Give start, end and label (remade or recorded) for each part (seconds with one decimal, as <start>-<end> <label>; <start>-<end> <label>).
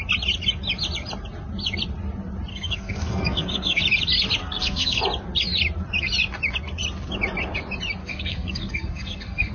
0.0-2.5 recorded; 2.5-3.8 remade; 3.8-4.4 recorded; 4.4-5.0 remade; 5.0-8.0 recorded; 8.0-9.5 remade